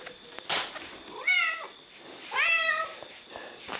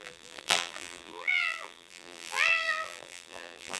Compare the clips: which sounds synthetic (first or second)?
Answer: second